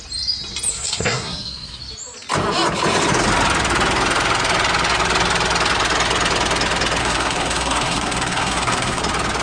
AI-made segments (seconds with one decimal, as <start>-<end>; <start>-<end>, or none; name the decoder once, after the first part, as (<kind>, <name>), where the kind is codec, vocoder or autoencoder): 0.7-1.8 (codec, SNAC); 7.0-9.0